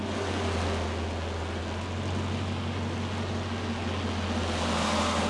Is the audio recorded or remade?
recorded